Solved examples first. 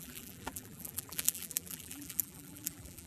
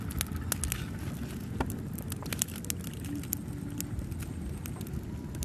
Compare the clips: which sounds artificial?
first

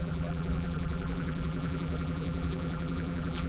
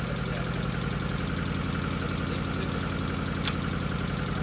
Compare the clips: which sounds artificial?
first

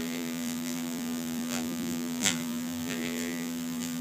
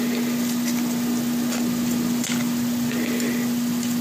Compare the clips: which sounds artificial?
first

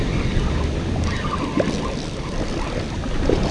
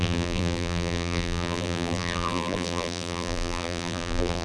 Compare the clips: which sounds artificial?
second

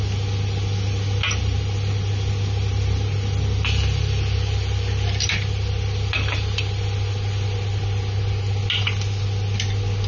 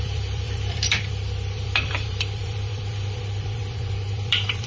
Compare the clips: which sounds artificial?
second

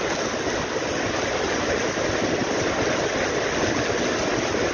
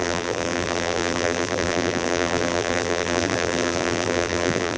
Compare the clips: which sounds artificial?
second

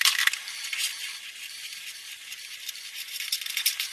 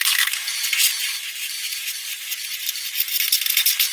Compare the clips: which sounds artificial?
first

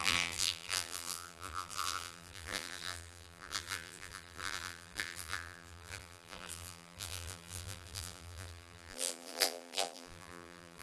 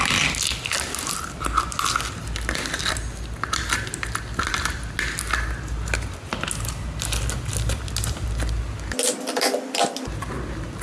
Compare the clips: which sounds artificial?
first